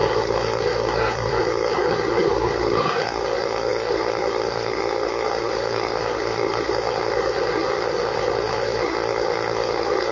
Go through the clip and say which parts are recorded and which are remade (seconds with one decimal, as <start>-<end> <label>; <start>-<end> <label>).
0.0-10.1 remade